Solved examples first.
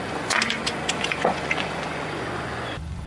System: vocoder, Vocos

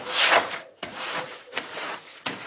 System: vocoder, Vocos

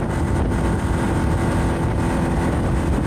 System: none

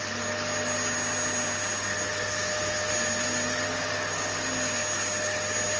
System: none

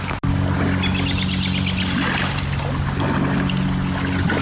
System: none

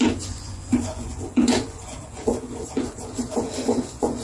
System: vocoder, Vocos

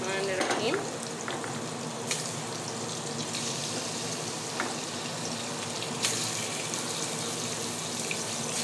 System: none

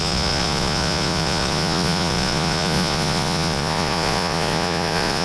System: vocoder, Vocos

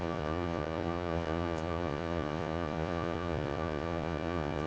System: vocoder, Vocos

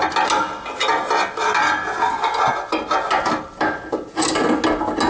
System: none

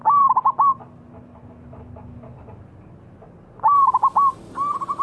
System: none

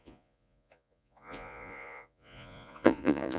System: vocoder, Vocos